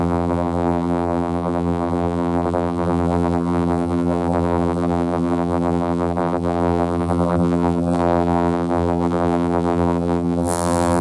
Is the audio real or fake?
fake